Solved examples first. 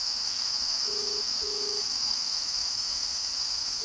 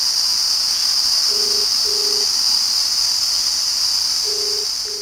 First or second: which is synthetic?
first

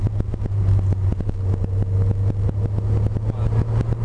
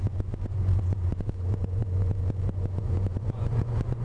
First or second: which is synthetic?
second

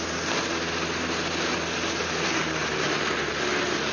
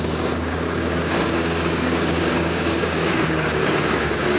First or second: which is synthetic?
second